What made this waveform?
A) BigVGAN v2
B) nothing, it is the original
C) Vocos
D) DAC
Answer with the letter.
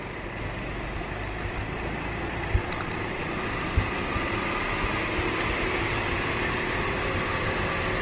B